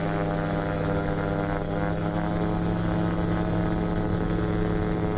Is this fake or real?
real